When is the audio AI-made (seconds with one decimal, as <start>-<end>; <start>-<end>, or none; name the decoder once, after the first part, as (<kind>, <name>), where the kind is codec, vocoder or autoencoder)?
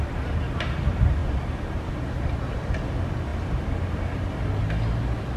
none